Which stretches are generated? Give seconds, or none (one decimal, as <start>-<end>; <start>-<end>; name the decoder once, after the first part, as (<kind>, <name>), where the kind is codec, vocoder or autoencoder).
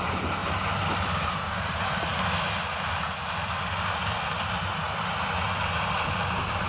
0.0-0.4 (vocoder, BigVGAN v2); 1.1-2.1; 6.1-6.7